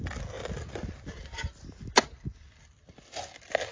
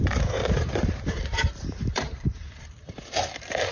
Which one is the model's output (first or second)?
second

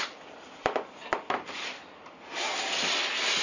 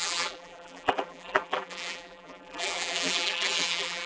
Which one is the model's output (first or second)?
second